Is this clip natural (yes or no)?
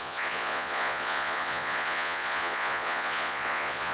no